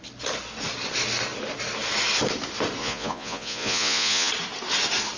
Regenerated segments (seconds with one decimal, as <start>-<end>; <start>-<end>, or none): 2.8-4.3